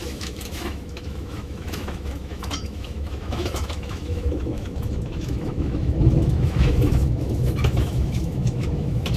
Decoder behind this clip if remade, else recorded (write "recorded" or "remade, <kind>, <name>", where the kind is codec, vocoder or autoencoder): remade, autoencoder, DAC-VAE